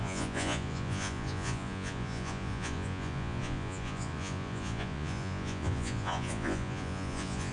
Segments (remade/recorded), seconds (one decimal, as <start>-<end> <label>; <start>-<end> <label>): 0.0-7.5 remade